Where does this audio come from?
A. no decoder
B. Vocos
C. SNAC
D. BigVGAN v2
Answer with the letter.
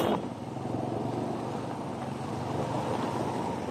A